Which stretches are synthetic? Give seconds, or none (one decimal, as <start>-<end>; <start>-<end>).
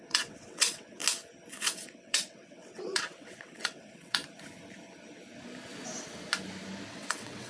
0.0-1.0; 1.5-4.2; 6.9-7.5